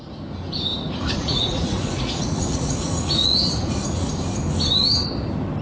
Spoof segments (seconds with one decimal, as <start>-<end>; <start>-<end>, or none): 0.7-4.1